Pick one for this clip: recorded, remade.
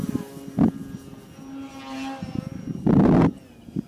recorded